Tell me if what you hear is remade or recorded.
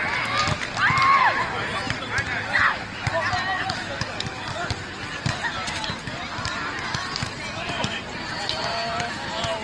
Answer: recorded